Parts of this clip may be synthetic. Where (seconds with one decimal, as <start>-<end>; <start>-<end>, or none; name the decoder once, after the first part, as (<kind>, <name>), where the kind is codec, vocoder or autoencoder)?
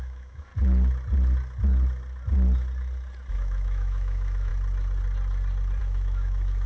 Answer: 0.0-0.5 (autoencoder, DAC-VAE); 3.3-4.5; 5.8-6.7